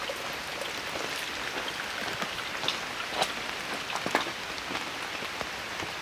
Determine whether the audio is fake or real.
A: real